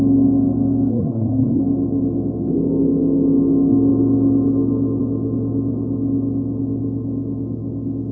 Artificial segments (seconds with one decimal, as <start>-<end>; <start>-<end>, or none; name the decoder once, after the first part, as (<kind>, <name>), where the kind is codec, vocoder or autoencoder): 0.9-1.6 (codec, SNAC)